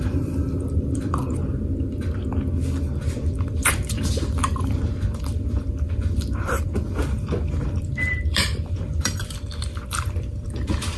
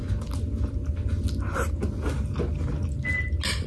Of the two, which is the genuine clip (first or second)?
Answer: second